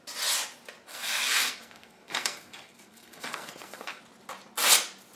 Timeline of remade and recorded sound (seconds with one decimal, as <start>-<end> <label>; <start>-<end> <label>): 0.0-0.9 recorded; 0.9-4.0 remade; 4.0-5.2 recorded